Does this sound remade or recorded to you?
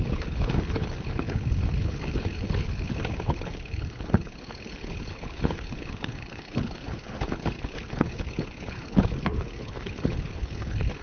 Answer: remade